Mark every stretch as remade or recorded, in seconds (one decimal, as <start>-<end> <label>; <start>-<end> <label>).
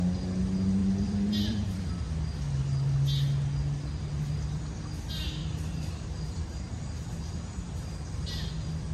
0.0-0.8 recorded; 0.8-1.9 remade; 1.9-5.4 recorded; 5.4-6.8 remade; 6.8-8.9 recorded